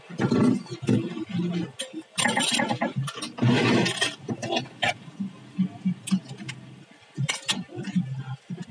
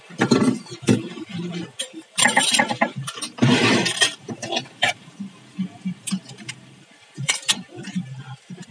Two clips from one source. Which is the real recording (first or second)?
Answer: first